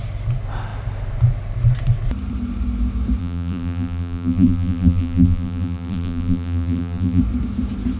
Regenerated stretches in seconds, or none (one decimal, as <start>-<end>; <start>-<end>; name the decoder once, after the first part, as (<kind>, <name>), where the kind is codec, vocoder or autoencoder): 3.2-7.2 (vocoder, BigVGAN v2)